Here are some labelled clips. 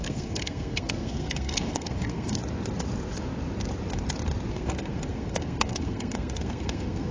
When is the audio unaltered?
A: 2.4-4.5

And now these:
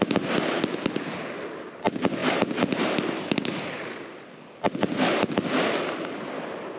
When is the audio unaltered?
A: 0.0-6.8

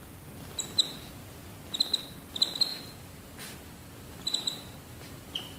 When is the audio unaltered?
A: 0.0-2.7

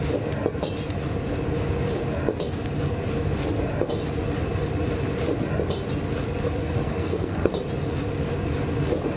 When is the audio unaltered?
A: 0.0-6.6; 7.5-9.2

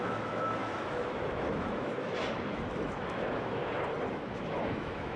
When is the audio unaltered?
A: 3.6-4.1

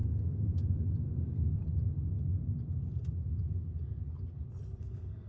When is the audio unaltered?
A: 1.6-4.8

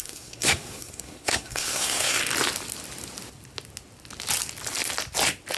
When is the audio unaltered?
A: 2.2-5.6

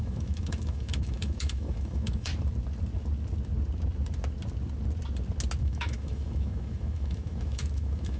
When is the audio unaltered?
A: 2.3-5.6